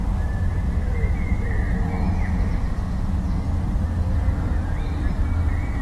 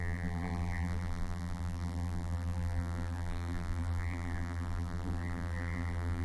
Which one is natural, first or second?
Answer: first